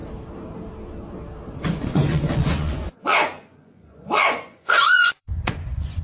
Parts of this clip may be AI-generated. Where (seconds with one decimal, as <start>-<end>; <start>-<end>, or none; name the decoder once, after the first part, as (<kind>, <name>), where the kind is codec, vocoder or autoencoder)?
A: 1.5-6.0 (vocoder, Vocos)